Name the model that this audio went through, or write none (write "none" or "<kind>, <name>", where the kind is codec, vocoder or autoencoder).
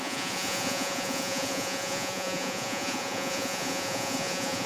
vocoder, Vocos